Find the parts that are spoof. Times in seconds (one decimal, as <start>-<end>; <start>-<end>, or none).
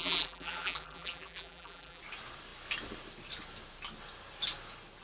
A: 0.0-2.0